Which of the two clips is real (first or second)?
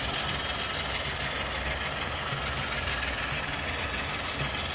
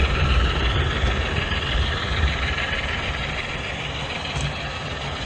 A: first